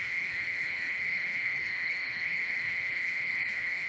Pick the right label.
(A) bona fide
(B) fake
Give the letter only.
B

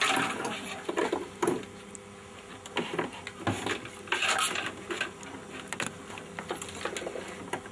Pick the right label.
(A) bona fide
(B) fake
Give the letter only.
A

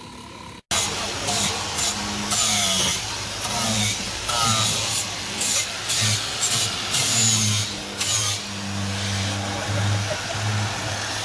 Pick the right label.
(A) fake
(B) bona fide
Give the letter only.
B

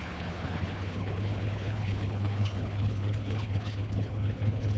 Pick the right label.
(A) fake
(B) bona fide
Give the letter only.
A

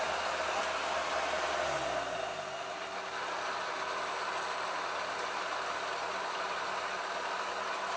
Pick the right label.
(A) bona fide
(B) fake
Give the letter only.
A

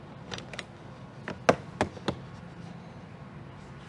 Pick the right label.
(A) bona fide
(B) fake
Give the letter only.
A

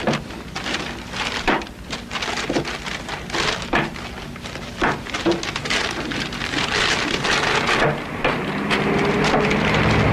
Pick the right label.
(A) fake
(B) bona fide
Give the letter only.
B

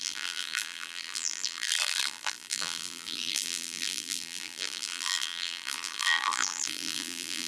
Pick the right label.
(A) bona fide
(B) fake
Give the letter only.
B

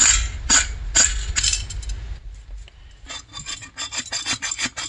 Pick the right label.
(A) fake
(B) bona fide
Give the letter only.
B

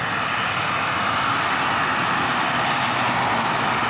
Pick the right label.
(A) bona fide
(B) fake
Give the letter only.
A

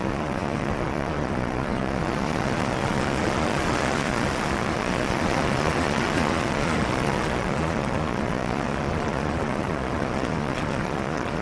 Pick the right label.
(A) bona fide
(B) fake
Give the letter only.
B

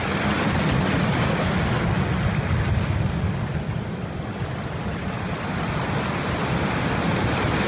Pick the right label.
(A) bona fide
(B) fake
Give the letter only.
A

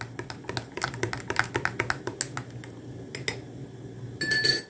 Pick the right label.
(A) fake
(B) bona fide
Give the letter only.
B